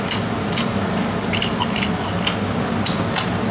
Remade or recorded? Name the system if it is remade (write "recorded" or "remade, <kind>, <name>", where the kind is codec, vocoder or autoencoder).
recorded